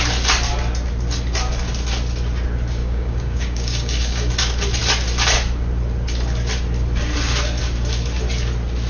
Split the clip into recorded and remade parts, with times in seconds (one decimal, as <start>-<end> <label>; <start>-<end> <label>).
0.0-2.8 recorded; 2.8-4.3 remade; 4.3-8.9 recorded